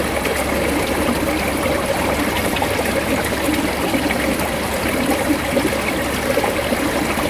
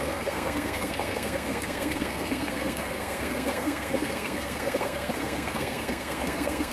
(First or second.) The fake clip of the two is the second